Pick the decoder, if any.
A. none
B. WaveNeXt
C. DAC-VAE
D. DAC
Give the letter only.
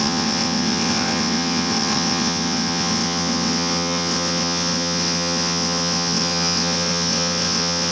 B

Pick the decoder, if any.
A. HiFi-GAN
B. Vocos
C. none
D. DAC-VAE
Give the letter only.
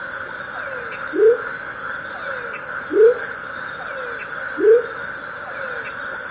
C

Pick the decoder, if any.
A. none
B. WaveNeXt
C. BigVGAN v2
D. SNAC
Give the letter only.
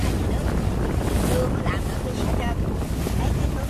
A